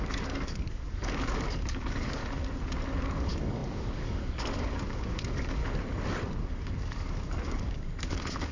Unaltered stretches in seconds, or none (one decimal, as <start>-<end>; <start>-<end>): 2.2-3.0; 5.6-6.4